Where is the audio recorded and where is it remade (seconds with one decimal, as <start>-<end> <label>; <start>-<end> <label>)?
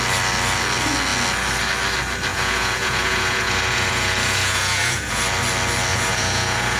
0.0-2.3 recorded; 2.3-5.2 remade; 5.2-5.9 recorded; 5.9-6.8 remade